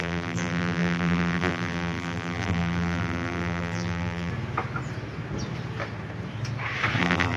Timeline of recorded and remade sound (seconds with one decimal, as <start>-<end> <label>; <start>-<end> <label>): 0.0-4.3 remade; 4.3-7.0 recorded; 7.0-7.4 remade